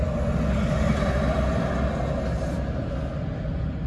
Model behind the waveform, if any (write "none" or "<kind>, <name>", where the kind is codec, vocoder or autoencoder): none